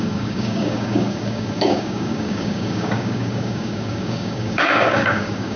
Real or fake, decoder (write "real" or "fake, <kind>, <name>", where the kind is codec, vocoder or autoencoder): fake, codec, DAC